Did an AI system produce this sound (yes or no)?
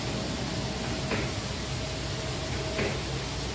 no